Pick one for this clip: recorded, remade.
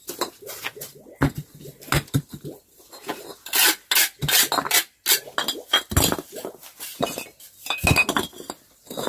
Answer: recorded